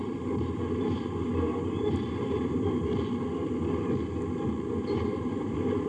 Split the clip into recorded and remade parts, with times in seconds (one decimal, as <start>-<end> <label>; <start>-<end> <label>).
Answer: 0.0-2.9 remade; 2.9-4.8 recorded; 4.8-5.9 remade